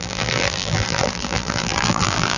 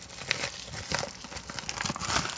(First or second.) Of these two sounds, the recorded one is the second